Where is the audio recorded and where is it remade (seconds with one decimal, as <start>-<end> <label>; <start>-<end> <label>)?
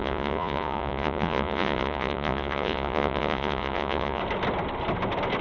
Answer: 0.0-4.2 remade; 4.2-5.4 recorded